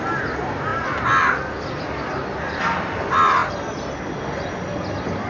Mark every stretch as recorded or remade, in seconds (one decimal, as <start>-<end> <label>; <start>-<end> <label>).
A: 0.0-5.3 recorded